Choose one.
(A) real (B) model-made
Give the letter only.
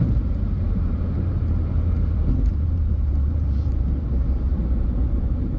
B